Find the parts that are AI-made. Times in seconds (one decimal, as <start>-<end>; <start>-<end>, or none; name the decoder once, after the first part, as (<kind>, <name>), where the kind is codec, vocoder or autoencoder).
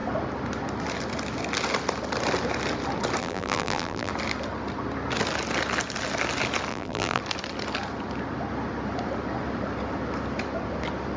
3.2-4.1 (vocoder, BigVGAN v2); 6.7-7.2